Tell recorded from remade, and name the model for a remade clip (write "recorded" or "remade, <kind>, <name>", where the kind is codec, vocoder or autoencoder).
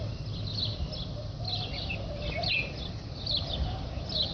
recorded